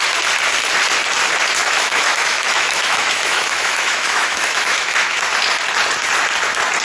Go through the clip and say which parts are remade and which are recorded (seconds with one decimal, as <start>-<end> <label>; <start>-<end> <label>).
0.0-1.6 recorded; 1.6-5.2 remade; 5.2-6.8 recorded